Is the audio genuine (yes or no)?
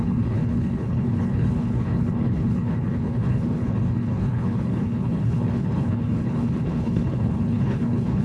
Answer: no